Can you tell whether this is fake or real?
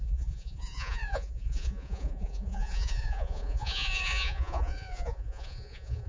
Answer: fake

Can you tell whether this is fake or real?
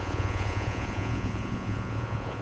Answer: fake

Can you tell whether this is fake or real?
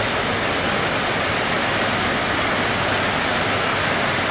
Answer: real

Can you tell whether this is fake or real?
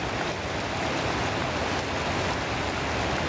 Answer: real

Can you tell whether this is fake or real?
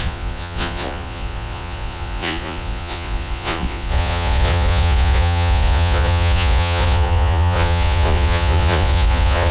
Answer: fake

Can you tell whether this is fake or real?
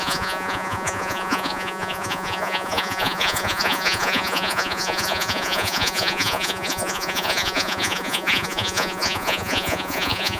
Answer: fake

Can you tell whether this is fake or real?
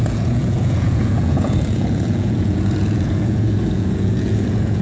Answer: fake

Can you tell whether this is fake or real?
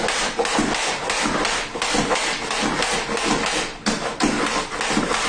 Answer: real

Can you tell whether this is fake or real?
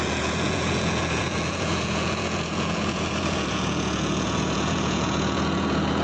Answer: fake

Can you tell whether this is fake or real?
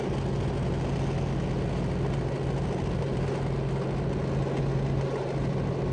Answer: real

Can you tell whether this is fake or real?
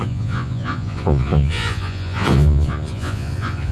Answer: fake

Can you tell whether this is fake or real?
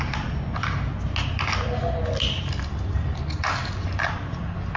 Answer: real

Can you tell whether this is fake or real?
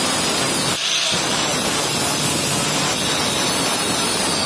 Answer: real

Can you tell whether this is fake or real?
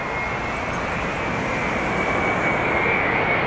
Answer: real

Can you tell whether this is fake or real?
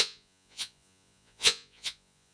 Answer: fake